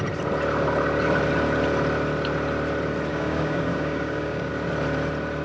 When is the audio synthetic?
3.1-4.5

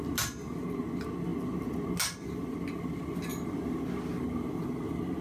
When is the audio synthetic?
none